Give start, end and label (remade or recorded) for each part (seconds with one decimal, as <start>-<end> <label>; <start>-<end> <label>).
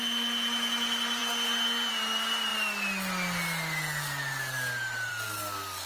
0.0-5.9 recorded